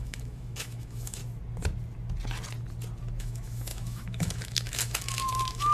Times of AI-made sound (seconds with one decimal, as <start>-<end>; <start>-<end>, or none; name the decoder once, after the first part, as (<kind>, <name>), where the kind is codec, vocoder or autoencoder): 0.0-1.2 (autoencoder, DAC-VAE); 3.2-5.7